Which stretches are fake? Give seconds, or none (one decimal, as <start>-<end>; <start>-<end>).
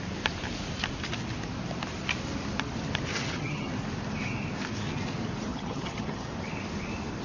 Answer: 3.1-3.7; 5.5-6.3